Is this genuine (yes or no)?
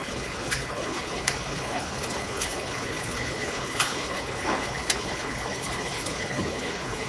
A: no